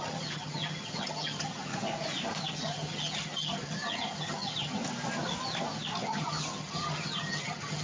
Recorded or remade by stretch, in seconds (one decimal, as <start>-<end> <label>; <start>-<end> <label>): 0.0-1.7 remade; 1.7-2.5 recorded; 2.5-4.8 remade; 4.8-6.0 recorded; 6.0-7.8 remade